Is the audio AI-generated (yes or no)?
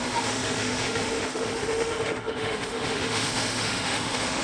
yes